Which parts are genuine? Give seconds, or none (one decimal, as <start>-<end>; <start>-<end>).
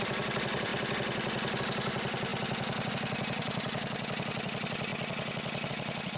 0.7-1.6; 2.3-2.9; 4.9-5.7